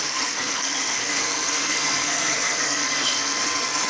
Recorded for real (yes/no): no